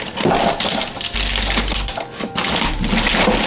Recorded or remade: recorded